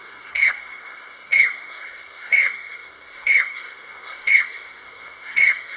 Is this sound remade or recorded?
remade